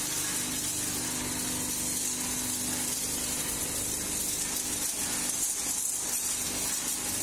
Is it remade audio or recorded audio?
recorded